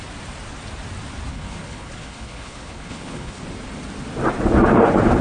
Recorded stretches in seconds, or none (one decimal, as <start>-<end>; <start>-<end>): 0.0-1.3; 3.4-5.2